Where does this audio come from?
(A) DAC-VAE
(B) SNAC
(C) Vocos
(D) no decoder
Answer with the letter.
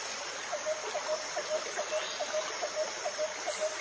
D